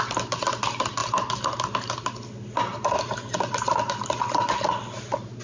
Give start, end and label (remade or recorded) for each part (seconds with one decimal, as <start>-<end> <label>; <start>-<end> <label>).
0.0-5.4 recorded